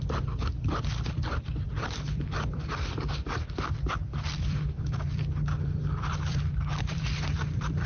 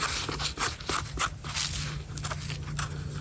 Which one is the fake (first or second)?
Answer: first